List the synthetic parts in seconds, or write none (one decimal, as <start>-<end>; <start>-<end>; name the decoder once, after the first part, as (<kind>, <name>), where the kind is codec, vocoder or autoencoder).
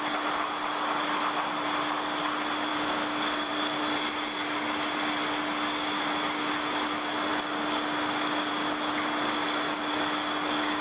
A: 2.7-3.5 (codec, DAC)